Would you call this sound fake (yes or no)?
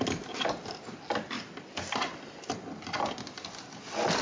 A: no